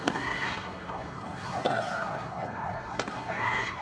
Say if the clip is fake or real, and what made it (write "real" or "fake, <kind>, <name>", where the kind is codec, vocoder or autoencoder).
fake, codec, SNAC